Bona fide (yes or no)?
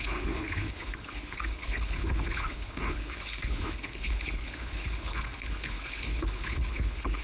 no